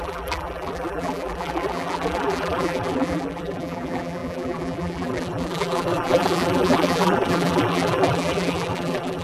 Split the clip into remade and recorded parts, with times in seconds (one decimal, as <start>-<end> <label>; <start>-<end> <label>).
0.0-9.2 remade